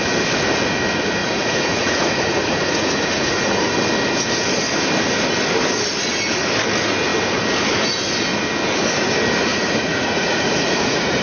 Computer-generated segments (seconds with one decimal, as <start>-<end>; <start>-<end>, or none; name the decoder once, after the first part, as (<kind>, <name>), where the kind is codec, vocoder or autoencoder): 1.2-3.7 (vocoder, Vocos); 9.5-11.2